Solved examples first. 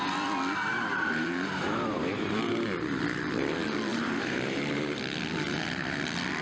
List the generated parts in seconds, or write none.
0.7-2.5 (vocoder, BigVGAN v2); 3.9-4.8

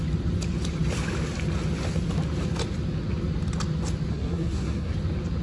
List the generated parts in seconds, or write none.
4.1-4.9 (codec, SNAC)

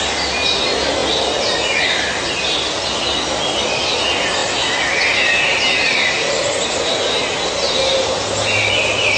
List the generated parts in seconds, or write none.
none

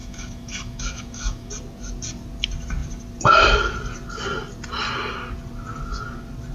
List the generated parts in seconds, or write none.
0.0-1.5 (autoencoder, DAC-VAE)

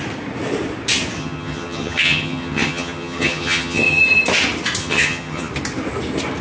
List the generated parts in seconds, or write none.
1.2-4.0 (vocoder, HiFi-GAN); 4.8-5.5